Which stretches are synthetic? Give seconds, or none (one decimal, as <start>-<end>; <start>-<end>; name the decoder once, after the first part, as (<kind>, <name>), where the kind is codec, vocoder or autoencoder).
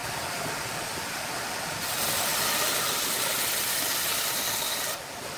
none